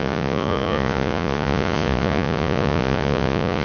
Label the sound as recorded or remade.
remade